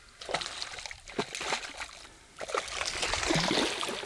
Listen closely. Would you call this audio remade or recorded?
recorded